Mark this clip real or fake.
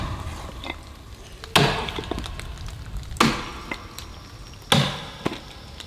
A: real